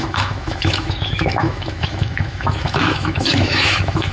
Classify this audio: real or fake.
fake